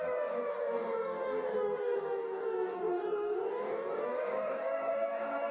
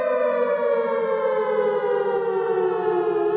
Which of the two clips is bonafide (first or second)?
second